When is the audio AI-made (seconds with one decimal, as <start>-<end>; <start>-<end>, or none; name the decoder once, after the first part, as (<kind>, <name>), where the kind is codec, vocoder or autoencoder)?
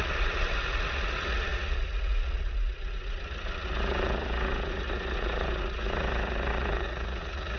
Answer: 0.0-7.6 (vocoder, Vocos)